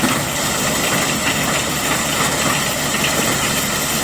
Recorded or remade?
recorded